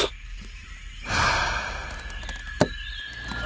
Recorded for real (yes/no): yes